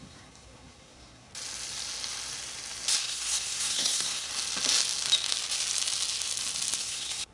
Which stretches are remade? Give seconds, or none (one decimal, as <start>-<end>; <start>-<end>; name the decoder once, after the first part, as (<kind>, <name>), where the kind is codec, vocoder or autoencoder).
0.0-1.3 (codec, SNAC); 3.0-4.3; 6.8-7.3